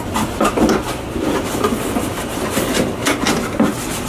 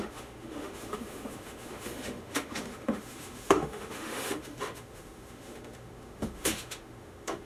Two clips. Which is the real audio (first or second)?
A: first